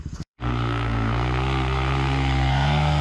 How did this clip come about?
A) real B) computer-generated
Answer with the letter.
B